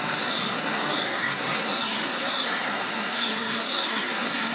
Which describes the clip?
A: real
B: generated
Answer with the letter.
B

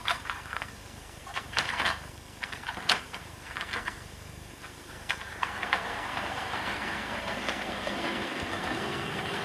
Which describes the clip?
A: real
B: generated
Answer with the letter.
B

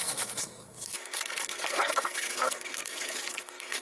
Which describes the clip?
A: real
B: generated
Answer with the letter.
B